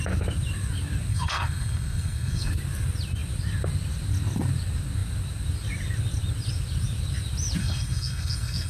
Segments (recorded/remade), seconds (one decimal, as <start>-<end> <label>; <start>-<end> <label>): 0.0-1.1 recorded; 1.1-2.5 remade; 2.5-7.6 recorded; 7.6-8.7 remade